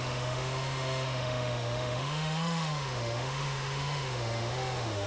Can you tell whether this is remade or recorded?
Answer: remade